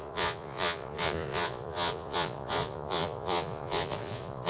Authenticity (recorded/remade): remade